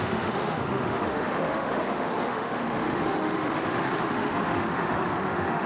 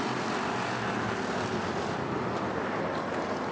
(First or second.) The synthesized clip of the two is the first